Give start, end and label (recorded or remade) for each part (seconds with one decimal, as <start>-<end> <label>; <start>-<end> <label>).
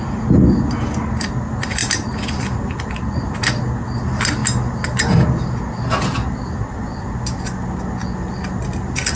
0.0-9.2 recorded